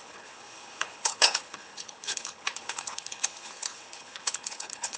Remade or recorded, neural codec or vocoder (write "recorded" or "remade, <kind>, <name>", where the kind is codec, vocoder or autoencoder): remade, codec, HILCodec